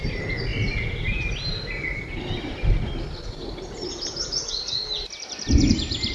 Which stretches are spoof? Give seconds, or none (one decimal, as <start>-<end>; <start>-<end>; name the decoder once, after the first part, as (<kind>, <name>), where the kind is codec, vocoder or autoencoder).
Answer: none